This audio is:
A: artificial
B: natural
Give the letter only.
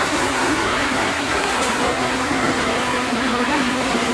A